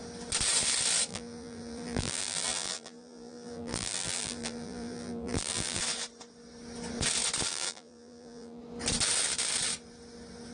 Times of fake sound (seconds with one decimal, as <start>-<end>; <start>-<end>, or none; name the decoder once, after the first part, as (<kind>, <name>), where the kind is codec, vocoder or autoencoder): 1.1-5.8 (vocoder, BigVGAN v2); 7.5-8.6